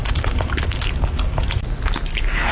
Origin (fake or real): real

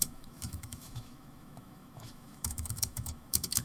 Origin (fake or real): fake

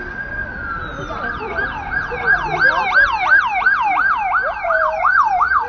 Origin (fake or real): real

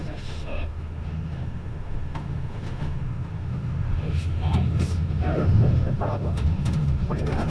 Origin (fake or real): fake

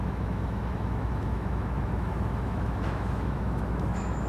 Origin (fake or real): fake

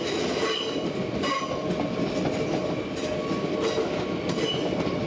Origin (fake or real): real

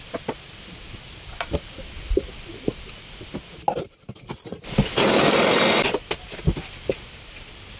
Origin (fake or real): real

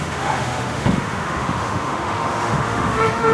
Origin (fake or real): fake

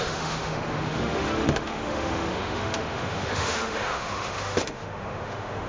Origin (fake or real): fake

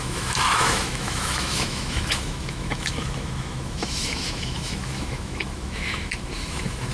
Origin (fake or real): fake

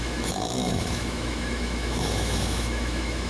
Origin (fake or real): fake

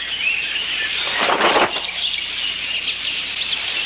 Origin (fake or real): real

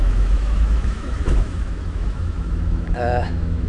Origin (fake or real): fake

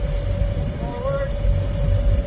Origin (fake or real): real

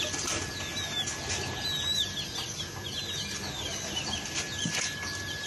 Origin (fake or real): real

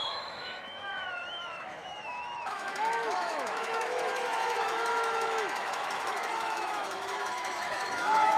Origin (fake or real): fake